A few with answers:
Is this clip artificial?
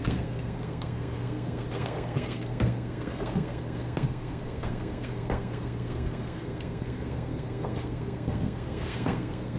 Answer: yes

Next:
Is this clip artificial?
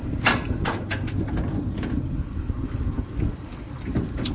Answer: no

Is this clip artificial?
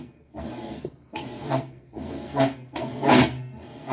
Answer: yes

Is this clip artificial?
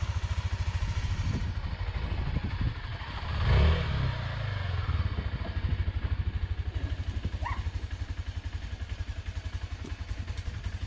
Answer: no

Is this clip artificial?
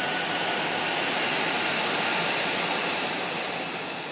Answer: no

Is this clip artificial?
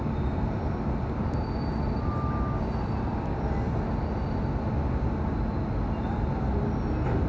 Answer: no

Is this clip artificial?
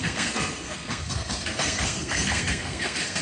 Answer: yes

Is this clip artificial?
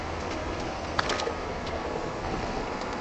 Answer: yes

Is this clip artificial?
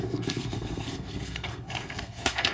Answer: yes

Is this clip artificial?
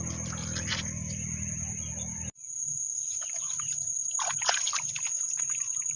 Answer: no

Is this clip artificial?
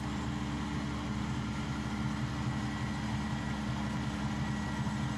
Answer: no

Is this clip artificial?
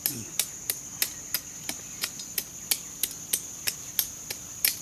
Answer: no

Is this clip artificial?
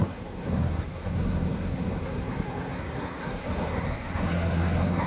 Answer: yes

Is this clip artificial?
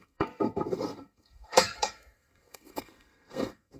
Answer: yes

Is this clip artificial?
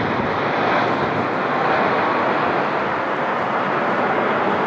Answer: no